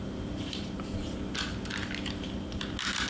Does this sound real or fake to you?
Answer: real